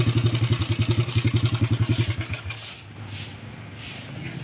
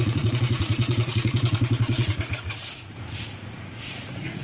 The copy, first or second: second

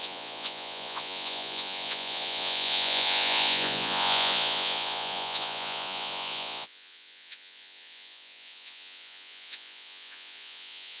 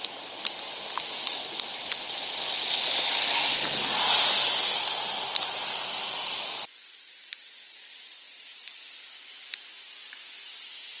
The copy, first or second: first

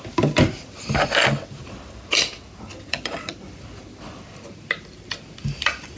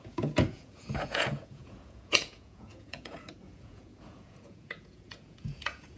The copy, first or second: second